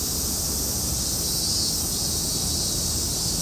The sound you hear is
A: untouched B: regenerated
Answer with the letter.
A